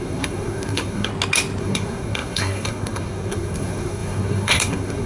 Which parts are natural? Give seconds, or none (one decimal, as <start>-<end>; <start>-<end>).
1.1-1.6